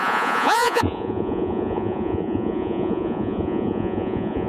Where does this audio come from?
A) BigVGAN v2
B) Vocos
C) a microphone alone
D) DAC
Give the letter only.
B